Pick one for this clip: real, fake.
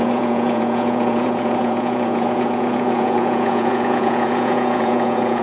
fake